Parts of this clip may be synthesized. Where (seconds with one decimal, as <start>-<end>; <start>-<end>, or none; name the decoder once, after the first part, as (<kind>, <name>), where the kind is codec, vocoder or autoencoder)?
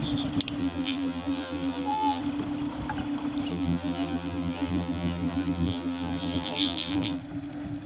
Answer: 0.6-2.2 (vocoder, BigVGAN v2); 3.5-7.2